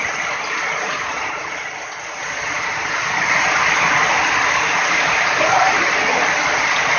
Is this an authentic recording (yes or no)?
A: yes